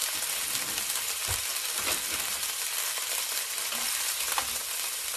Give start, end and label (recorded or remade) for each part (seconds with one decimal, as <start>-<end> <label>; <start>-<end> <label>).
0.0-1.4 recorded; 1.4-5.2 remade